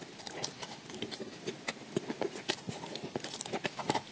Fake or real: real